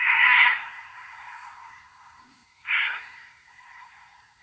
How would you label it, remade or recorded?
remade